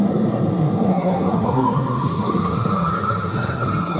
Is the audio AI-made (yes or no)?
yes